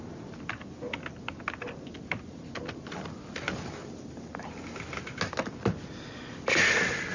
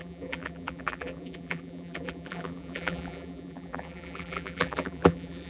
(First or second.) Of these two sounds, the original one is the first